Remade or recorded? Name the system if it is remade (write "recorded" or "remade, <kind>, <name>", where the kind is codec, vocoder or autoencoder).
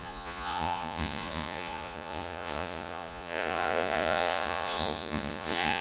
remade, vocoder, Vocos